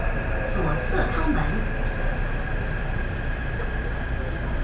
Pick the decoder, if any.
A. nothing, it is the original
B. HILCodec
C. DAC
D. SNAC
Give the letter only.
A